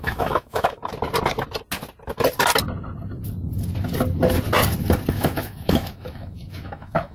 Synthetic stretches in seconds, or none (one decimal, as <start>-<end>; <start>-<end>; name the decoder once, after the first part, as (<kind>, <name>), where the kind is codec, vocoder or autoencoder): 0.0-0.8 (autoencoder, DAC-VAE); 5.1-7.1